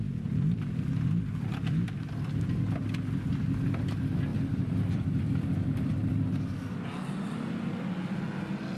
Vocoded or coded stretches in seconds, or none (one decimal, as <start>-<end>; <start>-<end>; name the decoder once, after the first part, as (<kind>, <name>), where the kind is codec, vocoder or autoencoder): 4.3-6.1 (vocoder, BigVGAN v2)